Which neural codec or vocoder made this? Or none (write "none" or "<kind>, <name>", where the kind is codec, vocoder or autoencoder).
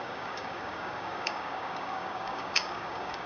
codec, DAC